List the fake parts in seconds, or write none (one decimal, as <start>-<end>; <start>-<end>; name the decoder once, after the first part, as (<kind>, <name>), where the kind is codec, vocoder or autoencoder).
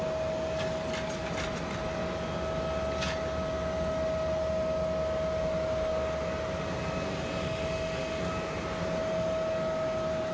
7.4-8.2 (autoencoder, DAC-VAE)